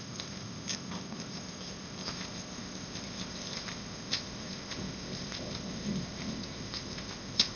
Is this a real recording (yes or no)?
no